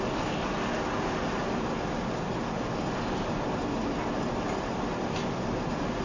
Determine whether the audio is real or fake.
real